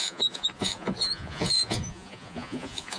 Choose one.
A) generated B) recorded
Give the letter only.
A